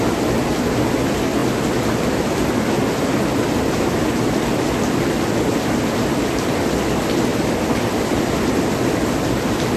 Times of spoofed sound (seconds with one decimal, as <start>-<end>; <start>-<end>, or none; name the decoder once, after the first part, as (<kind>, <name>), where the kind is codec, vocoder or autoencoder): none